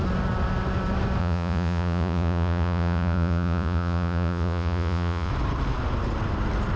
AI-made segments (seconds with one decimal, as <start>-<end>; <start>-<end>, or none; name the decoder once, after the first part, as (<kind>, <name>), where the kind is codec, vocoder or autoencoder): 1.2-5.3 (vocoder, Vocos)